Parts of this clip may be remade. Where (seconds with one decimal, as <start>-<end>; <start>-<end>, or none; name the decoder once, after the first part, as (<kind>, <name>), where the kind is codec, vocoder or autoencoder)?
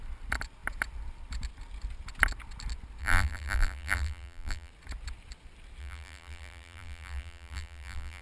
3.0-4.7 (vocoder, BigVGAN v2); 5.8-8.2